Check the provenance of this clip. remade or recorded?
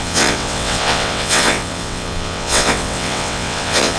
remade